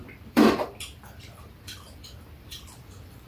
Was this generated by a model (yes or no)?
yes